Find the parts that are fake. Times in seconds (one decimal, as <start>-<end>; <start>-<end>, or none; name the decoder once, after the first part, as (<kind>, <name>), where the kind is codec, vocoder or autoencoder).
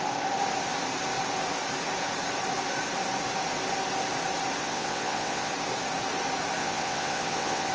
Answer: 4.6-5.5 (vocoder, WaveNeXt); 6.6-7.7